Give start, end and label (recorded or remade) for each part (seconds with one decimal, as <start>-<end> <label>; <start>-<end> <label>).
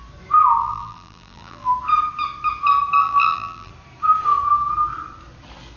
0.0-0.6 recorded; 0.6-1.7 remade; 1.7-3.0 recorded; 3.0-3.7 remade; 3.7-5.8 recorded